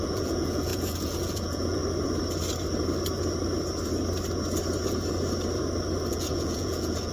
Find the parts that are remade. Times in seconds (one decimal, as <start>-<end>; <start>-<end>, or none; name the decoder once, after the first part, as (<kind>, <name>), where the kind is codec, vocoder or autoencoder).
0.0-1.8 (vocoder, Vocos); 6.1-7.1

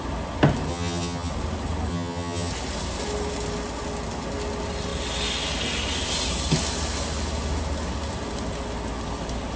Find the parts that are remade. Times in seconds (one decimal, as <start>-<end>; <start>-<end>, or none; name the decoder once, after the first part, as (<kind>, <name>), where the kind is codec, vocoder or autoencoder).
0.7-1.3 (vocoder, HiFi-GAN); 1.9-2.5

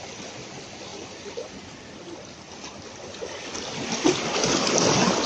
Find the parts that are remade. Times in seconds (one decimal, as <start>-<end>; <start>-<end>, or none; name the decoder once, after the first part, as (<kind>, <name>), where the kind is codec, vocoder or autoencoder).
0.9-3.2 (vocoder, BigVGAN v2)